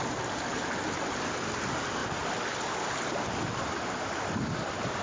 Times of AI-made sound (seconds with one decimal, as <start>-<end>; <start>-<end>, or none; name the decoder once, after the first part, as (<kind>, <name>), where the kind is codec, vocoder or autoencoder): none